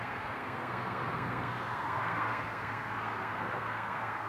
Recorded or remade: remade